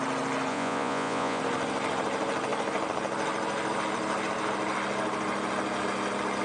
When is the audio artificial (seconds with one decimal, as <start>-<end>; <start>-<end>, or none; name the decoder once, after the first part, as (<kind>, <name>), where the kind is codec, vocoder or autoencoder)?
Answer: 0.5-1.4 (vocoder, Vocos)